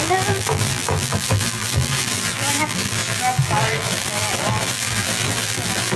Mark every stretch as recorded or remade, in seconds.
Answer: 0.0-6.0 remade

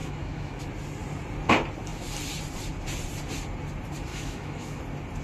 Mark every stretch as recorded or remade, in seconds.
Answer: 0.0-0.6 remade; 0.6-4.1 recorded; 4.1-4.8 remade; 4.8-5.2 recorded

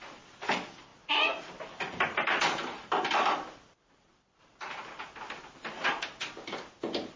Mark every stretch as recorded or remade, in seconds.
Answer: 0.0-4.5 remade; 4.5-5.4 recorded; 5.4-7.2 remade

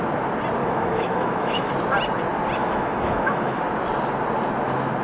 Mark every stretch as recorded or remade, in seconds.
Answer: 0.0-0.6 recorded; 0.6-1.7 remade; 1.7-2.6 recorded; 2.6-3.6 remade; 3.6-5.0 recorded

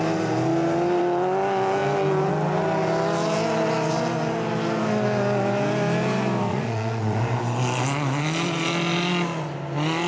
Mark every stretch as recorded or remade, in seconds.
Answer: 0.0-6.5 recorded; 6.5-7.2 remade; 7.2-10.1 recorded

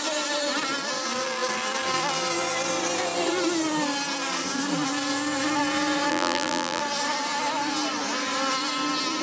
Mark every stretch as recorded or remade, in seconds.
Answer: 0.0-6.1 recorded; 6.1-6.8 remade; 6.8-9.2 recorded

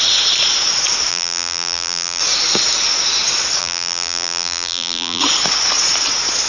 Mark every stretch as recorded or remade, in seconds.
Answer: 0.0-1.1 recorded; 1.1-2.2 remade; 2.2-3.6 recorded; 3.6-5.2 remade; 5.2-6.5 recorded

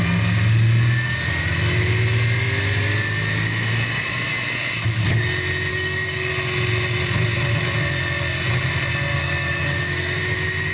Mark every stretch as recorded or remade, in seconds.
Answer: 0.0-5.7 recorded; 5.7-6.3 remade; 6.3-9.1 recorded; 9.1-10.2 remade; 10.2-10.7 recorded